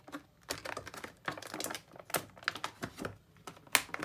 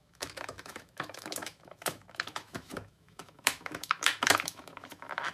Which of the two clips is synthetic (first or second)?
second